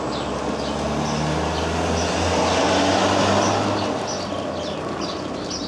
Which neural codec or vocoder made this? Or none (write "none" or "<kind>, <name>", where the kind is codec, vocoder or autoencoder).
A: none